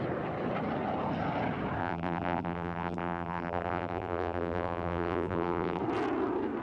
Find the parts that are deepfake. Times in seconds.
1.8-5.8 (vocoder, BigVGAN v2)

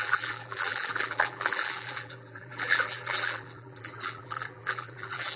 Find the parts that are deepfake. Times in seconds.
0.0-5.4 (vocoder, BigVGAN v2)

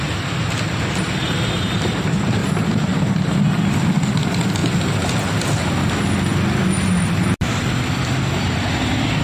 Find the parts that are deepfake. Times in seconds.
none